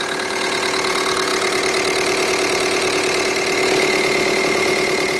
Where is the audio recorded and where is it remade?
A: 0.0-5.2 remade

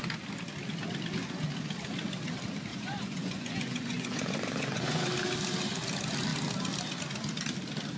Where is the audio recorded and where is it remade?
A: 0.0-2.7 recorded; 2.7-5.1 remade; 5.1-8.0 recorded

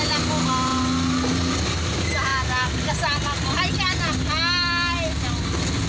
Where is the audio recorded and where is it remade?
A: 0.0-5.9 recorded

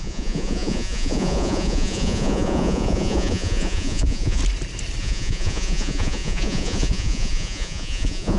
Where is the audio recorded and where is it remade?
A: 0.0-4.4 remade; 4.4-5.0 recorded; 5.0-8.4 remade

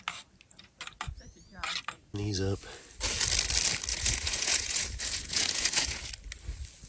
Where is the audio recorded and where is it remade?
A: 0.0-3.9 recorded; 3.9-6.1 remade; 6.1-6.9 recorded

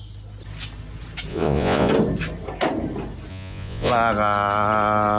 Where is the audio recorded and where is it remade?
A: 0.0-1.3 recorded; 1.3-1.9 remade; 1.9-3.3 recorded; 3.3-3.9 remade; 3.9-5.2 recorded

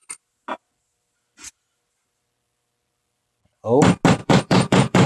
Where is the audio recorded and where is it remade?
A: 0.0-4.2 recorded; 4.2-5.1 remade